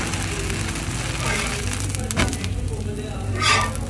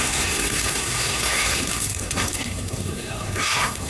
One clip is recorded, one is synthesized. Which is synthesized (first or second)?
second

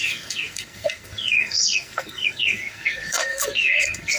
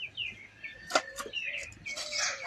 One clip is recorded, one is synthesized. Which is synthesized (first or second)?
first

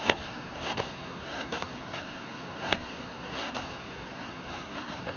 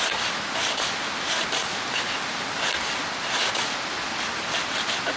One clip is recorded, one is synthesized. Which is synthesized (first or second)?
first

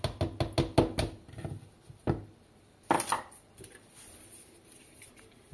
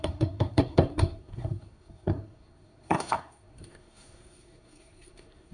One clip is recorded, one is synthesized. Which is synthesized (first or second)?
second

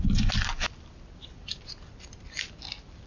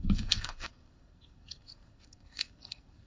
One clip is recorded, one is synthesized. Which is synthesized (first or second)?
second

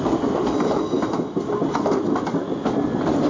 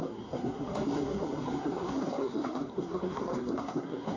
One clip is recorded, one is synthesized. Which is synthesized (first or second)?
second